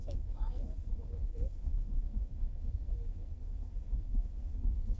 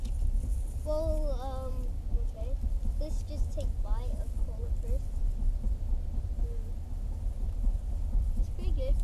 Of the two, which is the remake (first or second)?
first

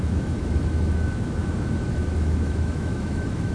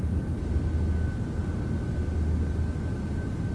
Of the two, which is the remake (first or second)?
first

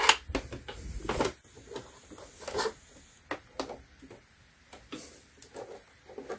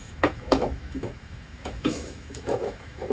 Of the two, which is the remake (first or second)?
second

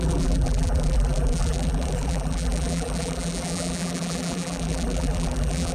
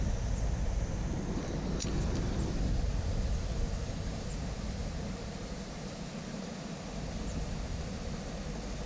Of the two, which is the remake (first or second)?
first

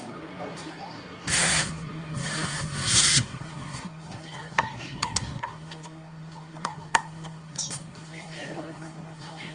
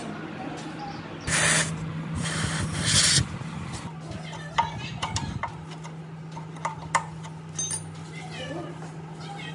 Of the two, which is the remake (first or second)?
first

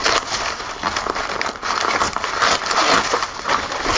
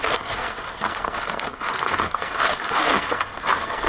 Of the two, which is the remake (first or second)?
second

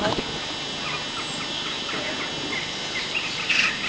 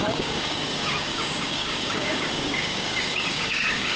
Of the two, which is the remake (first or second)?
second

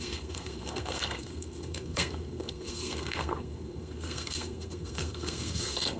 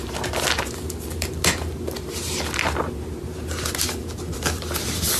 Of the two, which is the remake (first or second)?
first